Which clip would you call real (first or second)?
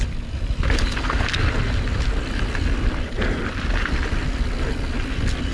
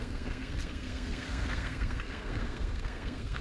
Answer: first